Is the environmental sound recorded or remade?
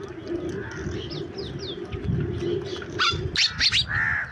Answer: recorded